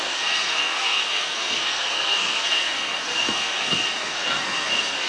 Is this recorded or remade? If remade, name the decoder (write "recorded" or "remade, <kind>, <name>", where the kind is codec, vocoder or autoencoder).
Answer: remade, codec, SNAC